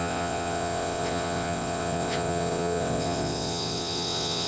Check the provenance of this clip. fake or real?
fake